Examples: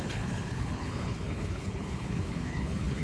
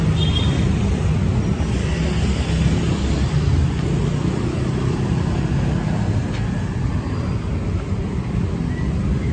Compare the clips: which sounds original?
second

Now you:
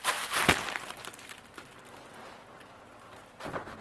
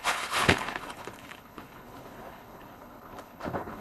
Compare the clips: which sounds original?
first